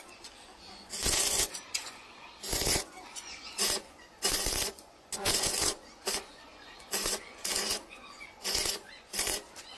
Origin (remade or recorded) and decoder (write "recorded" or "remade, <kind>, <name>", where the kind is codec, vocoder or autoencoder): remade, vocoder, Vocos